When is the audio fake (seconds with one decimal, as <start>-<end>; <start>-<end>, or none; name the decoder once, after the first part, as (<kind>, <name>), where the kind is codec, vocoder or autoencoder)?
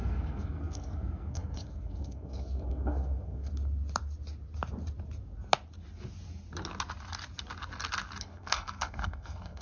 0.0-3.5 (codec, SNAC); 8.2-9.6